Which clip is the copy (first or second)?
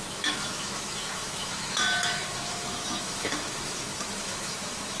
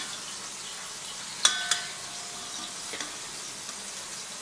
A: first